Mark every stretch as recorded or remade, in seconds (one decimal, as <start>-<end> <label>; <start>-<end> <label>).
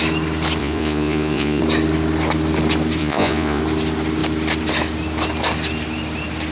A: 0.0-0.6 recorded; 0.6-1.6 remade; 1.6-3.0 recorded; 3.0-3.6 remade; 3.6-6.5 recorded